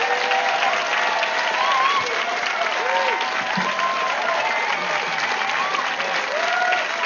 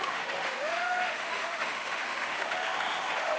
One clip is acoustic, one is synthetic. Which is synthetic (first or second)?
second